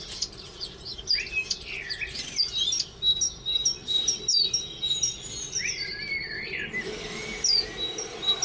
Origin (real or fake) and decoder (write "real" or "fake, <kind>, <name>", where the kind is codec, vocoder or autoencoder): real